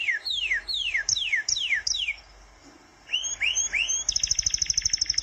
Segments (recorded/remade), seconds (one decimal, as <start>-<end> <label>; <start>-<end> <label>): 0.0-2.2 remade; 2.2-5.2 recorded

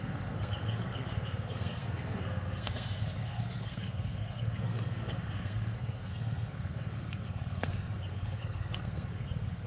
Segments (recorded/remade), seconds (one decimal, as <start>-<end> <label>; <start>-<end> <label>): 0.0-9.7 remade

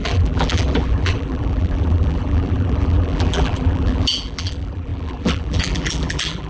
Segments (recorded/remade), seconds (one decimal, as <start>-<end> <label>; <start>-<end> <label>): 0.0-6.5 remade

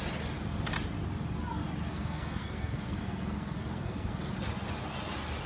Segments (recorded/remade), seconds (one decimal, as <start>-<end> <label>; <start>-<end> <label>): 0.0-1.9 recorded; 1.9-4.3 remade; 4.3-5.5 recorded

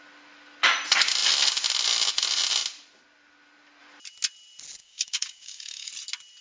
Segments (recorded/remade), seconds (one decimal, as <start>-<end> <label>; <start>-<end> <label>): 0.0-4.8 recorded; 4.8-5.9 remade; 5.9-6.4 recorded

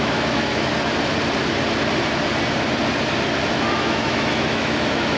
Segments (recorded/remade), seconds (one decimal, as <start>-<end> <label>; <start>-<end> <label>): 0.0-0.7 remade; 0.7-3.5 recorded; 3.5-5.2 remade